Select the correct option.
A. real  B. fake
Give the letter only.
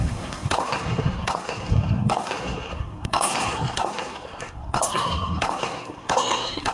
B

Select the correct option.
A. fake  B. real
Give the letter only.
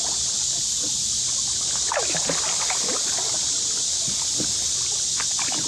A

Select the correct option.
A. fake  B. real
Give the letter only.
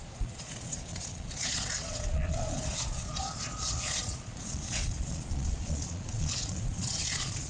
A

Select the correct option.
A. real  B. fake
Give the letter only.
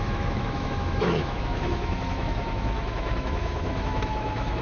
B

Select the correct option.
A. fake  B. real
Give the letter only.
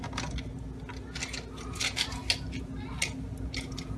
B